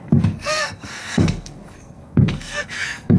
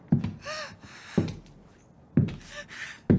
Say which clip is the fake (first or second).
first